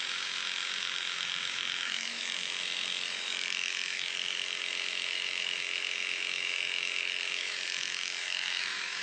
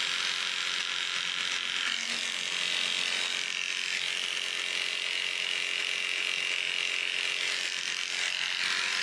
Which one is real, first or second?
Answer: second